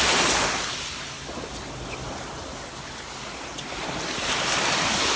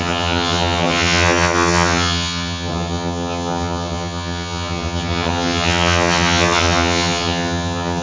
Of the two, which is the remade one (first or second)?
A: second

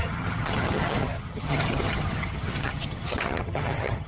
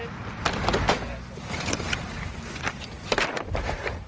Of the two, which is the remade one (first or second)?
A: first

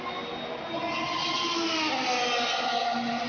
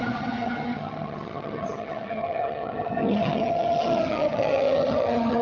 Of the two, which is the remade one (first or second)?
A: second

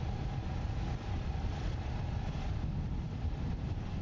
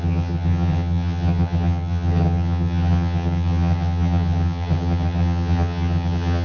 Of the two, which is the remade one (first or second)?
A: second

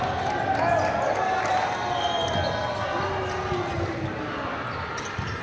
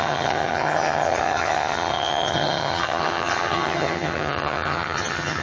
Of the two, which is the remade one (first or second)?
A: second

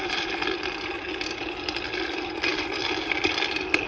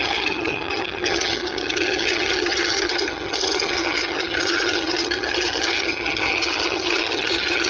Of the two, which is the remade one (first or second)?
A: second